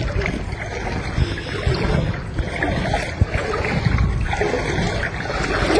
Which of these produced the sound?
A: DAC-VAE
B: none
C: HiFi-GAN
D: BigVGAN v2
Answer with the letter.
B